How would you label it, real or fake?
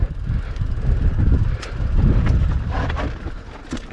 real